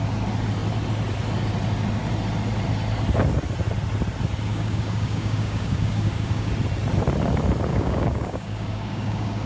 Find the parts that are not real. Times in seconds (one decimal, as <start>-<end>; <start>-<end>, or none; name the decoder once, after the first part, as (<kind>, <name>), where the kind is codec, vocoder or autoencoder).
4.5-6.5 (codec, DAC); 7.7-9.5

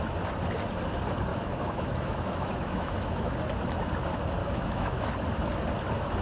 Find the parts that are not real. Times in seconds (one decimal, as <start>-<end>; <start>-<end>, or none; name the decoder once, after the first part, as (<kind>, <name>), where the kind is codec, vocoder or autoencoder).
1.3-3.3 (autoencoder, DAC-VAE); 4.4-5.1

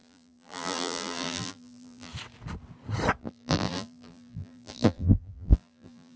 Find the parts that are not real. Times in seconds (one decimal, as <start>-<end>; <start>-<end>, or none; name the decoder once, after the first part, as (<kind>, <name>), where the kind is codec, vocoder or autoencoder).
0.0-2.1 (vocoder, BigVGAN v2); 3.2-6.2